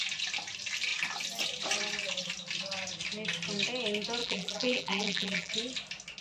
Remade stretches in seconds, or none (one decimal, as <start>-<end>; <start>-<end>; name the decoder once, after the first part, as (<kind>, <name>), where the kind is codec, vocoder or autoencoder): 4.2-5.5 (vocoder, BigVGAN v2)